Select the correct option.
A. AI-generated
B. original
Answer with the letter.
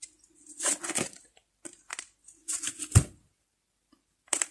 B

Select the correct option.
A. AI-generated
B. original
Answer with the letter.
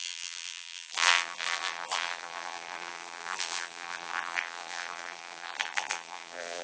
A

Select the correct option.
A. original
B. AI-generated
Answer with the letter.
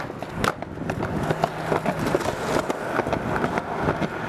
A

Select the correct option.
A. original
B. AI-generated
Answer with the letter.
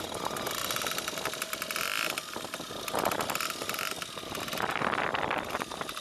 A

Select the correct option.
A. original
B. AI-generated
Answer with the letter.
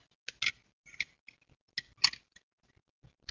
A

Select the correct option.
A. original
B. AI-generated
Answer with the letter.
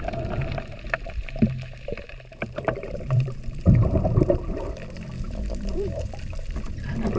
B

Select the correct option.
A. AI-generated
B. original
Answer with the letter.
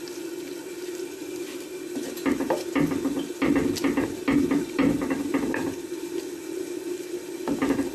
B